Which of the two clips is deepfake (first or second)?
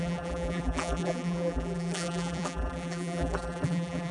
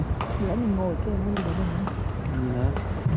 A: first